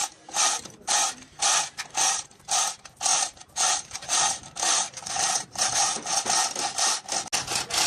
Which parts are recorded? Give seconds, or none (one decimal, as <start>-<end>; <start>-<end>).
0.9-3.1; 5.7-7.9